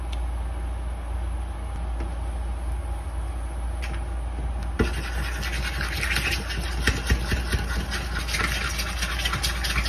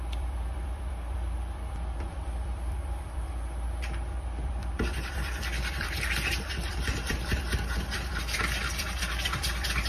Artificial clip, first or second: second